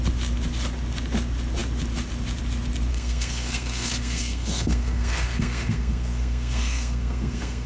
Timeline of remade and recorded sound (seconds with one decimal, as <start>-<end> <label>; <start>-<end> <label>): 0.0-2.9 recorded; 2.9-7.7 remade